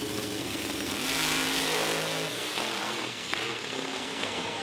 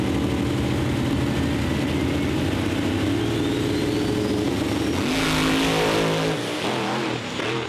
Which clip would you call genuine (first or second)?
second